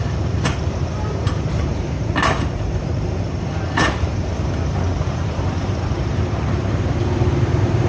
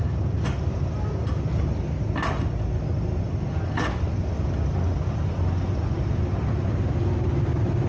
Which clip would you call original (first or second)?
second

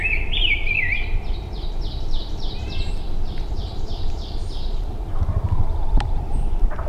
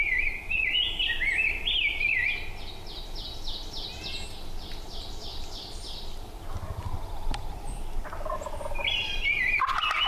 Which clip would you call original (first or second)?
second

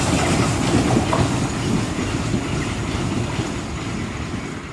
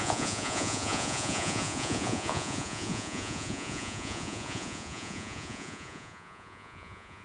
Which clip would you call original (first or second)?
first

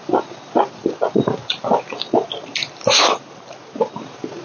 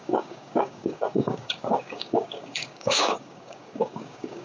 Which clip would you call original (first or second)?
first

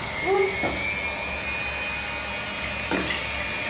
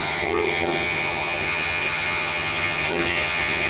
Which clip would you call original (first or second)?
first